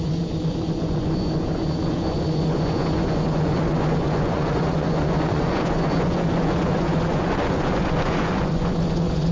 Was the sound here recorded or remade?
remade